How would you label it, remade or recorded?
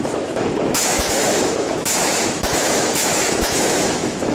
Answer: remade